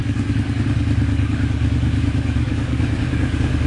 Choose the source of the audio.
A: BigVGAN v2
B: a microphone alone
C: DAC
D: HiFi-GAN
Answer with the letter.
C